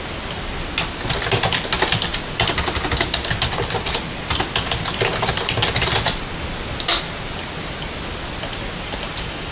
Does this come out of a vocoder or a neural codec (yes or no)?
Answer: no